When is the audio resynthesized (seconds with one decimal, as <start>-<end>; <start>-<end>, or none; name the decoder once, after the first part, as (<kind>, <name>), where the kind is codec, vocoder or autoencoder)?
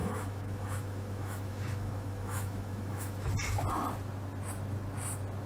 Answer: 0.0-3.3 (autoencoder, DAC-VAE)